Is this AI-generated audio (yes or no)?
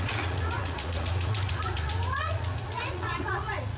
yes